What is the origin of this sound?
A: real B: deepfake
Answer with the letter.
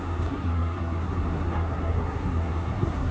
B